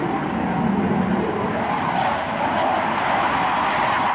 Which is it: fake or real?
real